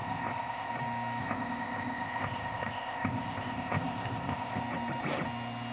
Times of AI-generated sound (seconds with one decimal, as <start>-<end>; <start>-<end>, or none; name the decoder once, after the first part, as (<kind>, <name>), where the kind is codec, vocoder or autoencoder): 0.0-0.7 (codec, ZipCodec); 1.2-4.6